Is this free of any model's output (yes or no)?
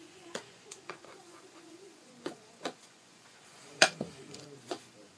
no